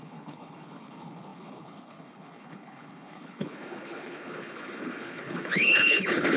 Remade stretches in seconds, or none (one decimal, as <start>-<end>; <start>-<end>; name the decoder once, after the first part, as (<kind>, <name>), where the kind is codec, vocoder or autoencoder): 0.0-6.4 (codec, HILCodec)